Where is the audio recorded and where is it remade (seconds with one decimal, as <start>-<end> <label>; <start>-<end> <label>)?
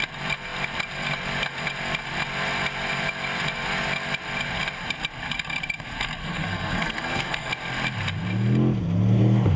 0.0-6.2 recorded; 6.2-7.5 remade; 7.5-9.6 recorded